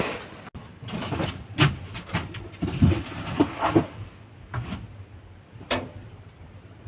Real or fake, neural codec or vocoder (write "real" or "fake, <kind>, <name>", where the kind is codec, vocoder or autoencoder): real